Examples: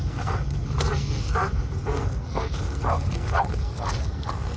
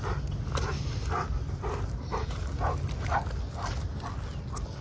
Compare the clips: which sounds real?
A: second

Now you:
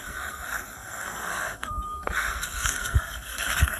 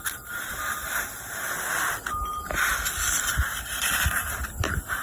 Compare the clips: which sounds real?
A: second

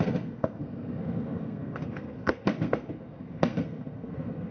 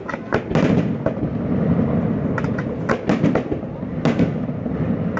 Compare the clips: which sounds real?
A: second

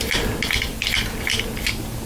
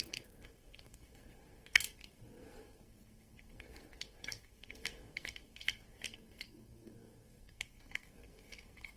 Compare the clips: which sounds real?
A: first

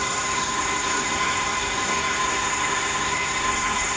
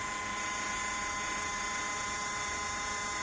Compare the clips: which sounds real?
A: second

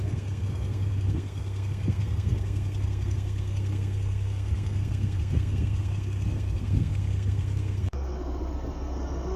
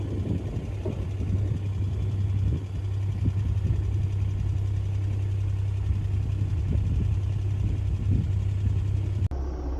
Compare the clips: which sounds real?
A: second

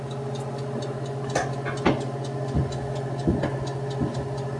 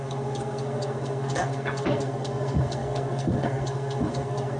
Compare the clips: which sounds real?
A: first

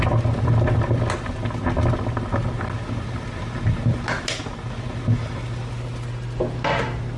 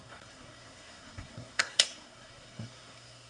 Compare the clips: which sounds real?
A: first